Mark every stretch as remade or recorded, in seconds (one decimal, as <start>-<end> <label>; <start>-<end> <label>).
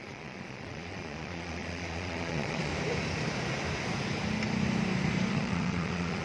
0.0-2.7 remade; 2.7-5.3 recorded; 5.3-6.2 remade